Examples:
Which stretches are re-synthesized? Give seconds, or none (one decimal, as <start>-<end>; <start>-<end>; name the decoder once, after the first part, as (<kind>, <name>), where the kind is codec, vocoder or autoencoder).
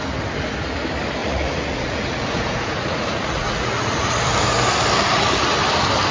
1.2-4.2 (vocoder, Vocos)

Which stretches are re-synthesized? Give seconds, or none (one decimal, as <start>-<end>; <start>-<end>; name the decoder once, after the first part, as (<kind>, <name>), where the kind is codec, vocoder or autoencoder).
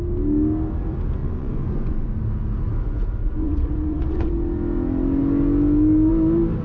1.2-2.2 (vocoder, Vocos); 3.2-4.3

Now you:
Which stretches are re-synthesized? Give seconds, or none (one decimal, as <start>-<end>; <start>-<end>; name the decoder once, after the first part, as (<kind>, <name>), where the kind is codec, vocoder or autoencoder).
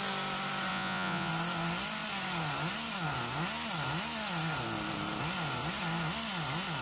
0.7-1.3 (vocoder, Vocos)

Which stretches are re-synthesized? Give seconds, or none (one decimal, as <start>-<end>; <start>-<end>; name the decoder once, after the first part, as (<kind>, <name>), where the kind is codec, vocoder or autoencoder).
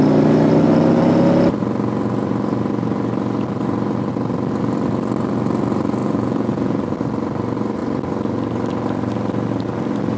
6.0-6.8 (vocoder, Vocos)